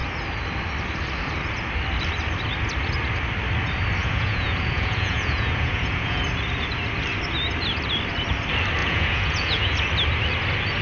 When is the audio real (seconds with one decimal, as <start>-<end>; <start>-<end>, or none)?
0.0-4.0; 6.2-8.8; 9.7-10.8